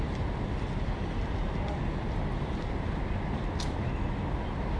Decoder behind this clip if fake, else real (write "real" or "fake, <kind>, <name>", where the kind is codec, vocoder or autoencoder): real